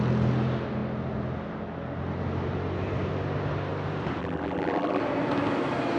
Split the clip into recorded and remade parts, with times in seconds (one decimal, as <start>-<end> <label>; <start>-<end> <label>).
0.0-4.2 recorded; 4.2-5.0 remade; 5.0-6.0 recorded